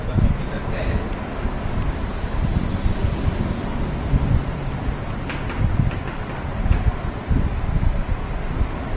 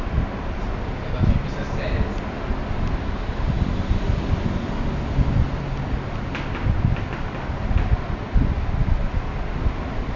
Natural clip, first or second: second